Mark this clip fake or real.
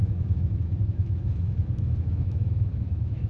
fake